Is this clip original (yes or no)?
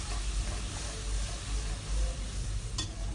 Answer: yes